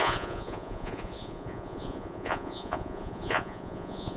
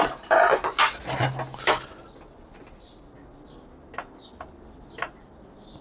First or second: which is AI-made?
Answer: first